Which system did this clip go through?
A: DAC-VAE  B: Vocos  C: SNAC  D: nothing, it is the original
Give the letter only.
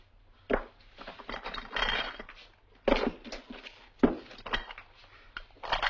D